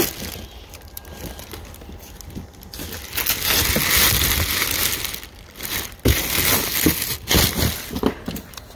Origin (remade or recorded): recorded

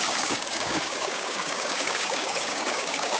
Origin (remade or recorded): remade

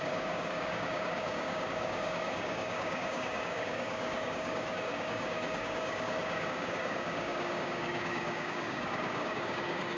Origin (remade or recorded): remade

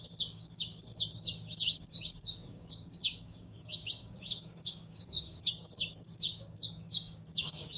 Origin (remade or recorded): remade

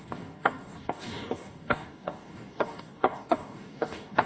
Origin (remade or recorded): remade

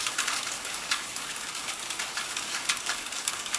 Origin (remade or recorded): remade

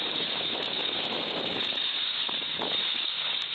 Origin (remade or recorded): remade